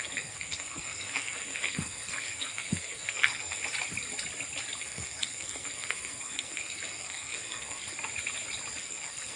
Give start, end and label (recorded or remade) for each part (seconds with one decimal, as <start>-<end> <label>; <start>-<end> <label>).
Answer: 0.0-3.6 remade; 3.6-4.8 recorded; 4.8-7.8 remade; 7.8-8.8 recorded; 8.8-9.4 remade